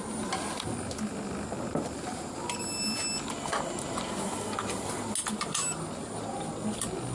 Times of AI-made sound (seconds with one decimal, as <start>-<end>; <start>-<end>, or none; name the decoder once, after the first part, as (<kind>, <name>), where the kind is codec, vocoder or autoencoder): none